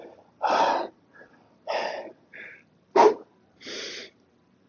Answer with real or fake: fake